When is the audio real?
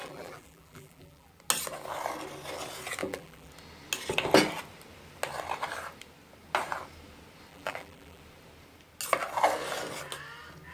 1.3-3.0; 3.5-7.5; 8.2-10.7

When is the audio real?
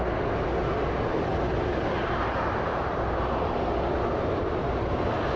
0.0-1.3; 2.2-2.7; 4.4-5.4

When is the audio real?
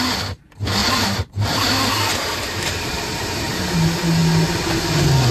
0.0-0.8; 3.6-5.3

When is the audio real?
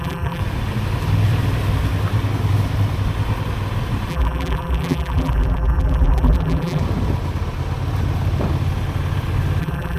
0.4-4.1; 6.8-9.6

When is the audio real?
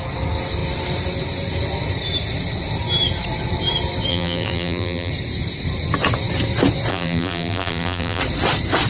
0.0-4.1; 5.1-6.9; 8.2-8.9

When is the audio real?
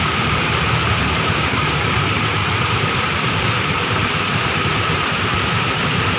none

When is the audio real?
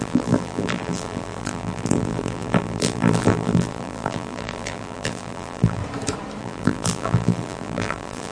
5.8-6.4